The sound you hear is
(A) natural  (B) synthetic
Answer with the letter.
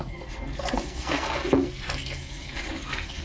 B